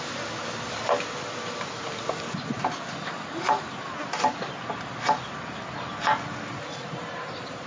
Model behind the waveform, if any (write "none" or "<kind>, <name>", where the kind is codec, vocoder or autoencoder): none